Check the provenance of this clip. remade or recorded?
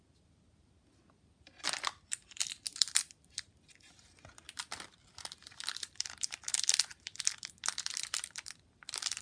recorded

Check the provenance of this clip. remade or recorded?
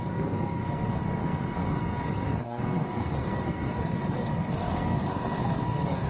remade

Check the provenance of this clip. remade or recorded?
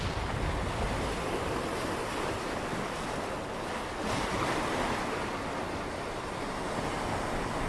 recorded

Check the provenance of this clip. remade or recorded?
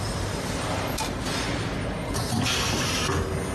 recorded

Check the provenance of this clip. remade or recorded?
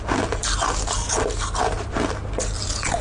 recorded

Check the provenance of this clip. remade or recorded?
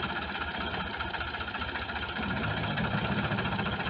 recorded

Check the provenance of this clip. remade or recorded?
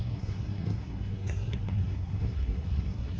remade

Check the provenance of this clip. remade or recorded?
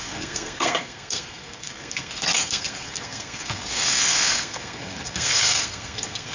remade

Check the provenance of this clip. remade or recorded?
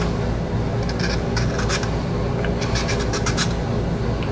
recorded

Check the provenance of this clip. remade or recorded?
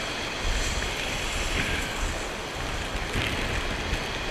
recorded